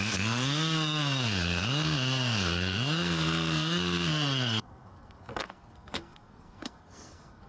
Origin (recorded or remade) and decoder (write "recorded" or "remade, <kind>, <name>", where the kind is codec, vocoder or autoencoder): remade, codec, SNAC